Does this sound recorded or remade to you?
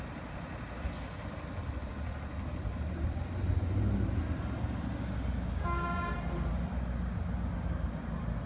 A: recorded